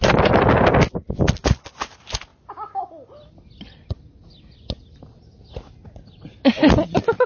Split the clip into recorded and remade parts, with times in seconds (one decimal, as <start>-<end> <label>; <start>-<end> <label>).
0.0-7.3 recorded